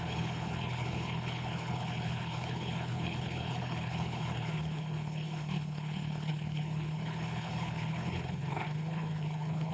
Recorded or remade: remade